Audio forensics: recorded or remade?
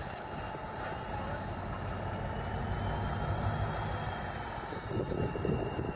recorded